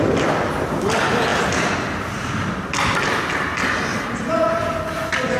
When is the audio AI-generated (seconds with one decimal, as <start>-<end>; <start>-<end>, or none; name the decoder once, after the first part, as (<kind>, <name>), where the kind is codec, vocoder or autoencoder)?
none